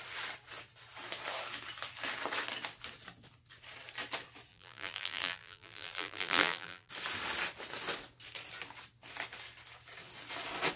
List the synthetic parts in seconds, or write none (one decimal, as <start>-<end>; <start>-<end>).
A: 4.5-6.9

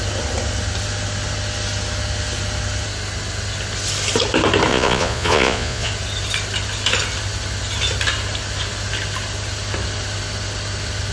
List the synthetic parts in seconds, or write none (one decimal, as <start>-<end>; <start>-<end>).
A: 4.7-5.9

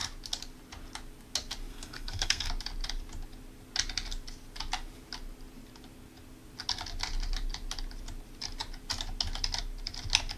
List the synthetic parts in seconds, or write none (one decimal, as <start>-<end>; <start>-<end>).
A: 1.7-2.5

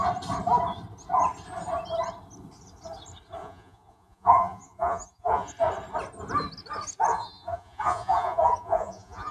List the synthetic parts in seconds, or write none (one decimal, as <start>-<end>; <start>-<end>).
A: 3.4-5.5; 7.1-9.3